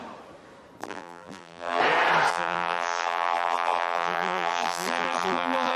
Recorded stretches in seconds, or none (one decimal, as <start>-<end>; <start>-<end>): 0.0-0.8; 1.8-2.3